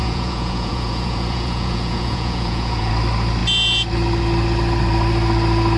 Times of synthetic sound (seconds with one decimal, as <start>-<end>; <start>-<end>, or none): 0.0-2.9